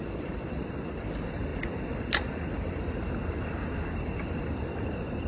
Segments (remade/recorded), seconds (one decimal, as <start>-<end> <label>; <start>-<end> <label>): 0.0-5.3 recorded